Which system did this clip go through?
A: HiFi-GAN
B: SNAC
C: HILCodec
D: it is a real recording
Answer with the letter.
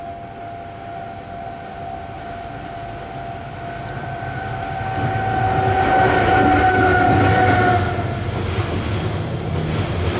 D